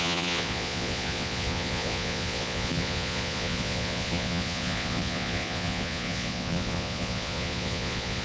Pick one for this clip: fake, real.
fake